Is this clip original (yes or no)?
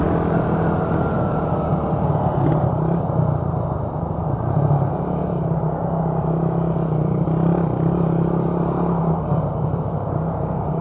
yes